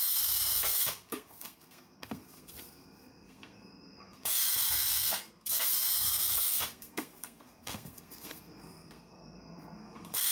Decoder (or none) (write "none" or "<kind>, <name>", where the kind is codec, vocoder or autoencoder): codec, SNAC